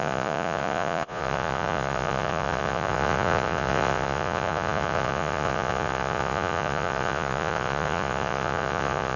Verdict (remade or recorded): remade